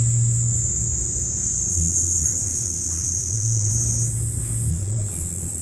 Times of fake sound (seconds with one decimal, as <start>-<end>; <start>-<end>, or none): 1.7-3.7; 4.7-5.6